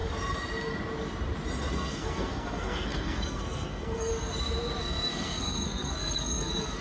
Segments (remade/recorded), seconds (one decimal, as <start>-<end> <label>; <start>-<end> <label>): 0.0-1.7 recorded; 1.7-4.1 remade; 4.1-4.8 recorded; 4.8-6.8 remade